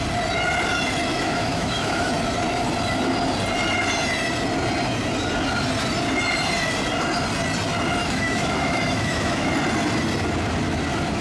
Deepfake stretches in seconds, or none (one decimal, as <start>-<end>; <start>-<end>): 1.1-2.1; 8.0-9.5